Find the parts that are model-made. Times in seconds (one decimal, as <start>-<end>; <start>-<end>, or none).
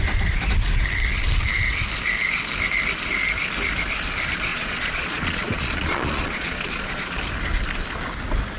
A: 4.5-7.2